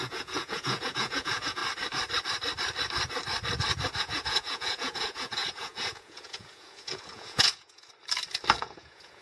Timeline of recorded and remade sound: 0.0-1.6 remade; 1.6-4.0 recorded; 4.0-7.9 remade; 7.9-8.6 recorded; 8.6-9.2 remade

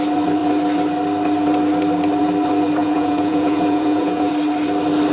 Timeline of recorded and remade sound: 0.0-2.8 recorded; 2.8-4.3 remade; 4.3-5.1 recorded

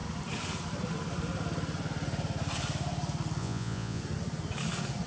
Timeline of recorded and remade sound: 0.0-3.4 recorded; 3.4-4.0 remade; 4.0-5.1 recorded

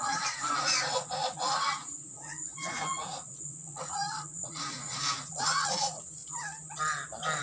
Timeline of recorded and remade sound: 0.0-6.2 remade; 6.2-7.4 recorded